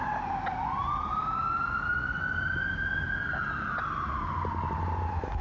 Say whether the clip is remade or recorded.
recorded